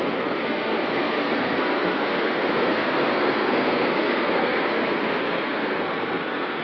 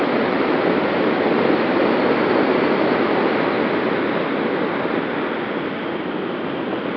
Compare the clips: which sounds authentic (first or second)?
second